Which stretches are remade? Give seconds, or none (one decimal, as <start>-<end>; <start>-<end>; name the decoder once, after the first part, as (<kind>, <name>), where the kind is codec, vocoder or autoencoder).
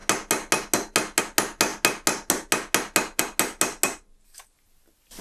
none